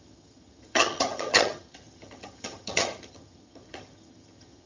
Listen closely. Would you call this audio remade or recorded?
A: remade